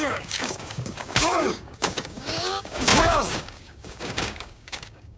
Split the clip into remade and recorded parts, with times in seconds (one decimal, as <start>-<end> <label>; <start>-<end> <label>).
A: 0.0-5.2 remade